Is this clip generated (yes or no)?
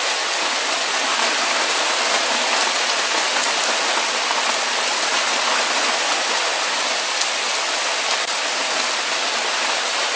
no